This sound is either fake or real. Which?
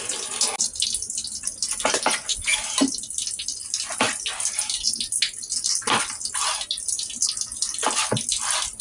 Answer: real